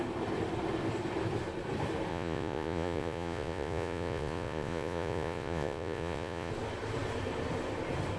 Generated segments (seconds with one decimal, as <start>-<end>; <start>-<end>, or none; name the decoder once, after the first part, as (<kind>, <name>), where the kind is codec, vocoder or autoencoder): 2.1-6.5 (vocoder, Vocos)